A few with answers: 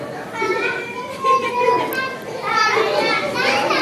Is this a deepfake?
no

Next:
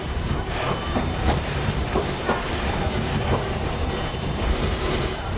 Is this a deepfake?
yes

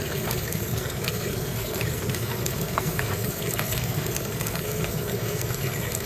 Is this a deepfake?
yes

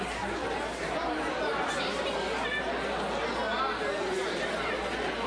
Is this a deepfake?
no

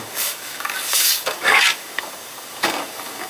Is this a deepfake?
yes